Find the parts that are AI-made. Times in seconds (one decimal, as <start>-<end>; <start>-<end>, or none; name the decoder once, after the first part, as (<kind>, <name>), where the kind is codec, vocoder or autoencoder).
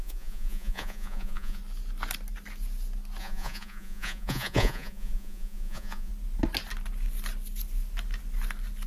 0.0-1.6 (vocoder, Vocos); 3.2-6.1